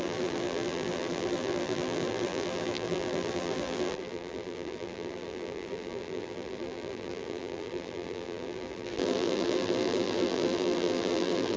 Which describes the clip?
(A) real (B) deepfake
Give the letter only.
B